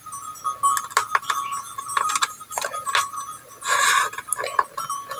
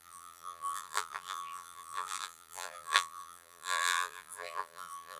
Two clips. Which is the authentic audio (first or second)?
first